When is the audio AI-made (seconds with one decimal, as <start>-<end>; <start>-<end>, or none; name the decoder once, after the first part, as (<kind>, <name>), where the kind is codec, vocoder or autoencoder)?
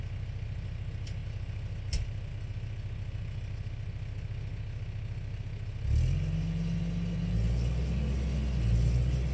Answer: none